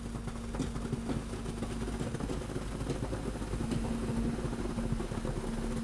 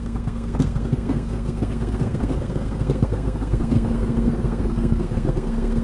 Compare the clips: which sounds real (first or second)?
first